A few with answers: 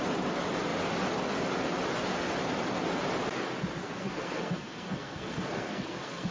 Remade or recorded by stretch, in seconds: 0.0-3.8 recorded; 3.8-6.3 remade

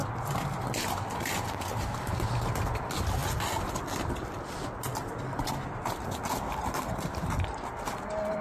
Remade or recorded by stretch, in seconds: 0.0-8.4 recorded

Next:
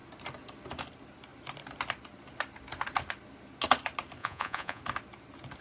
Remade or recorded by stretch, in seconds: 0.0-4.2 recorded; 4.2-4.8 remade; 4.8-5.6 recorded

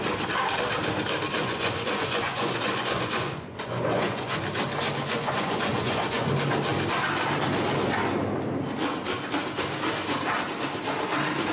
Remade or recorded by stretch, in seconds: 0.0-1.4 recorded; 1.4-4.4 remade; 4.4-5.0 recorded; 5.0-6.3 remade; 6.3-11.5 recorded

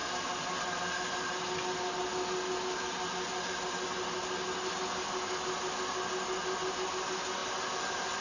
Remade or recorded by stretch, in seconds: 0.0-8.2 recorded

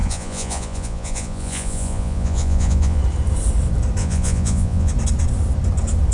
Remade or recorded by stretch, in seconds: 0.0-3.0 remade; 3.0-4.0 recorded; 4.0-4.9 remade; 4.9-6.1 recorded

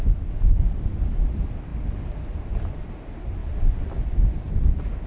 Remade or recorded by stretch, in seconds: 0.0-5.1 recorded

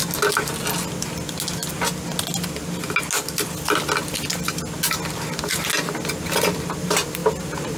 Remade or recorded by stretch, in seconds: 0.0-7.2 recorded; 7.2-7.8 remade